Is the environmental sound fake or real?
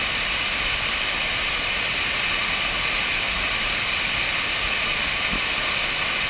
real